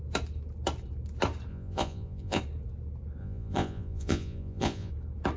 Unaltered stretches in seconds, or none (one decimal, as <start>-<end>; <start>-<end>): 0.0-1.5; 2.4-3.2; 4.9-5.4